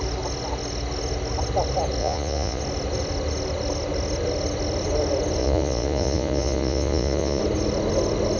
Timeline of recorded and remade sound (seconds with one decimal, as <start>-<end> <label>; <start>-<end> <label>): 0.0-2.0 recorded; 2.0-2.6 remade; 2.6-5.4 recorded; 5.4-7.4 remade; 7.4-8.4 recorded